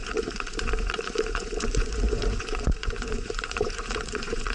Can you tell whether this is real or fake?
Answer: fake